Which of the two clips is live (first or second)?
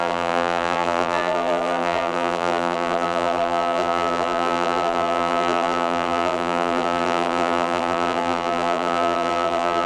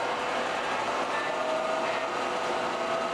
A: second